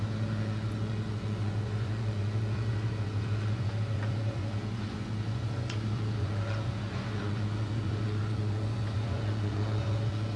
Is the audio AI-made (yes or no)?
yes